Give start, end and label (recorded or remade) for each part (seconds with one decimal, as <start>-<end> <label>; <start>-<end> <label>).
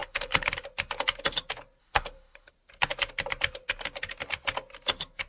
0.0-0.5 remade; 0.5-1.8 recorded; 1.8-2.5 remade; 2.5-5.3 recorded